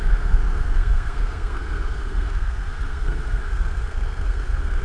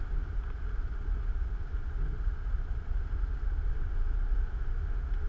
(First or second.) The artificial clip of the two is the first